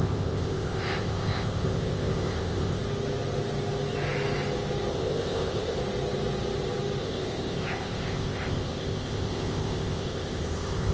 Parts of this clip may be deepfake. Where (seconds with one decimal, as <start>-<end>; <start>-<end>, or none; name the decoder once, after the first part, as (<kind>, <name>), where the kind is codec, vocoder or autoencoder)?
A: 0.0-2.8 (codec, ZipCodec); 4.9-5.8; 7.0-10.9